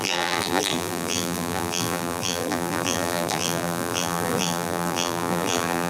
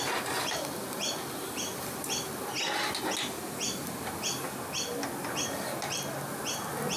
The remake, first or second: first